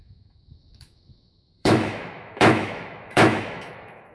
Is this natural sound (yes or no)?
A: no